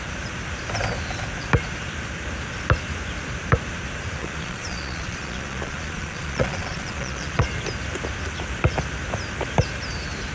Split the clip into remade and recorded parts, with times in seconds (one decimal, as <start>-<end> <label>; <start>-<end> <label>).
0.0-4.2 recorded; 4.2-7.5 remade; 7.5-10.3 recorded